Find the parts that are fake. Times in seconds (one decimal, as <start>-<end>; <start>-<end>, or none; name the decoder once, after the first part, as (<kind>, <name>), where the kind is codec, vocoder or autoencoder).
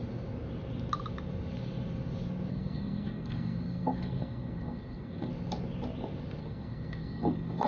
2.5-5.3 (codec, SNAC); 6.4-7.7